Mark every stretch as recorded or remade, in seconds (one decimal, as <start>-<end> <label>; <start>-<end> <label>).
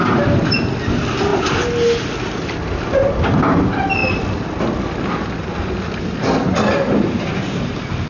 0.0-8.1 recorded